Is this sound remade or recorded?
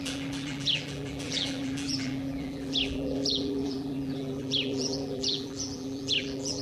remade